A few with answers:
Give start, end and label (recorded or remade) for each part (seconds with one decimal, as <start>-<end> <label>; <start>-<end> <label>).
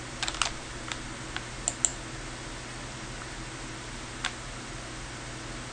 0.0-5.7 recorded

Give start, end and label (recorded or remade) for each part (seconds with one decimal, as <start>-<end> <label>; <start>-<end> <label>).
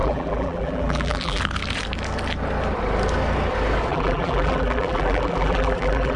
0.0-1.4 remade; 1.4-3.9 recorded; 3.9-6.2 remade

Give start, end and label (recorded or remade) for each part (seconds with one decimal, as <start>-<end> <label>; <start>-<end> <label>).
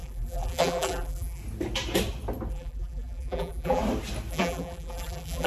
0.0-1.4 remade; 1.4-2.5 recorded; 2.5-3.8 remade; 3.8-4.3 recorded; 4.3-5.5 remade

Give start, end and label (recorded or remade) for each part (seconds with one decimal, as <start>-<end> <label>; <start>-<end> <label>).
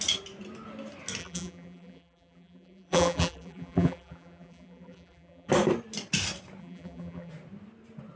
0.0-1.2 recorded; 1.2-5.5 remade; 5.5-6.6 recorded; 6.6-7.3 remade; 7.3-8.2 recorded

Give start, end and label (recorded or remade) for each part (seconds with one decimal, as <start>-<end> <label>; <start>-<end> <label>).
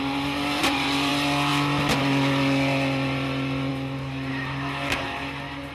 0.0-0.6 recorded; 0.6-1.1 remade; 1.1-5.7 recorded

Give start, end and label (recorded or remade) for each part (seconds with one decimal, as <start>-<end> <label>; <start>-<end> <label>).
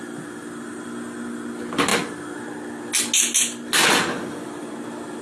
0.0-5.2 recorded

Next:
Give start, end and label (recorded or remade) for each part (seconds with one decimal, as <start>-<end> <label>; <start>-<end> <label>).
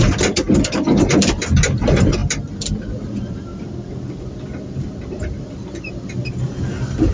0.0-7.1 recorded